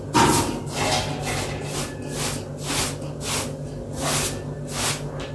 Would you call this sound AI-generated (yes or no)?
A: no